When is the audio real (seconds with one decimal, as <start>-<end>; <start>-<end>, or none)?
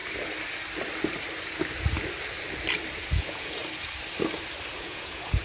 0.0-3.2; 3.6-4.8